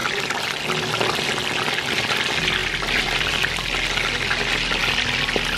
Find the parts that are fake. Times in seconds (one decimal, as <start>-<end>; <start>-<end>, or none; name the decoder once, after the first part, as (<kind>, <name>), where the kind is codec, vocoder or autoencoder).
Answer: 0.0-0.6 (vocoder, BigVGAN v2); 2.6-3.3